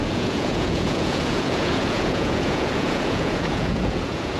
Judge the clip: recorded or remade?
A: remade